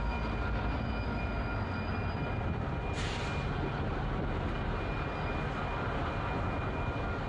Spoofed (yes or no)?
no